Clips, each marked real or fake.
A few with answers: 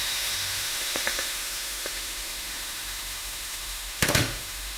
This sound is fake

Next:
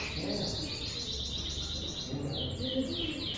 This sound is real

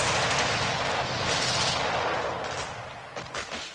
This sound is real